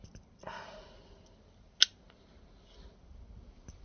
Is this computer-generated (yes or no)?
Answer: no